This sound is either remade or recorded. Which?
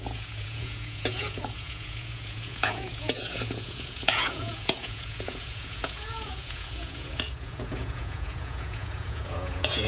remade